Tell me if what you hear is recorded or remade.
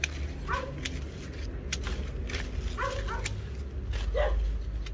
recorded